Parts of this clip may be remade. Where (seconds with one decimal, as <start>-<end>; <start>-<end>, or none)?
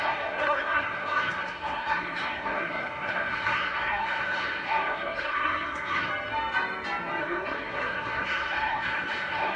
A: 0.0-6.1; 7.2-9.6